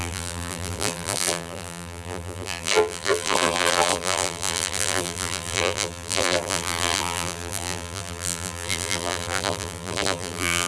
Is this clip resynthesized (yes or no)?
yes